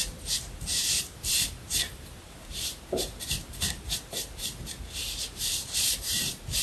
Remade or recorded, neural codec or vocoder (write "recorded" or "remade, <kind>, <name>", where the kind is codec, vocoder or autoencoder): remade, vocoder, BigVGAN v2